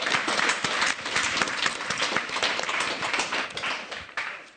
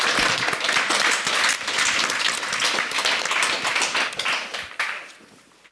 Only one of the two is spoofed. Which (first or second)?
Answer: first